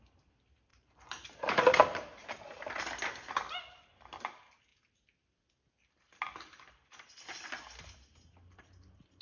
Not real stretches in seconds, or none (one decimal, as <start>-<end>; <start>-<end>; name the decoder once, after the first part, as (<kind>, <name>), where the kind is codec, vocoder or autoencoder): 0.7-1.8 (vocoder, BigVGAN v2)